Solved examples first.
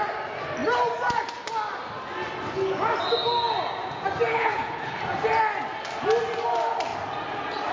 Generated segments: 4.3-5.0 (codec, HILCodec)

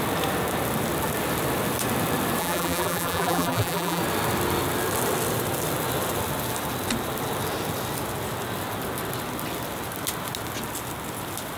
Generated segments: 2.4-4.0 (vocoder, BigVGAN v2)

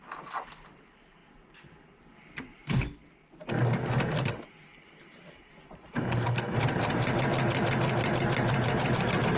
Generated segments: 4.7-7.2 (vocoder, BigVGAN v2)